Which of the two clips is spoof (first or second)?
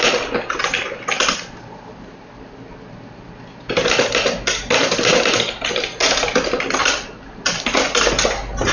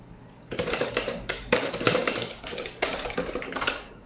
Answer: second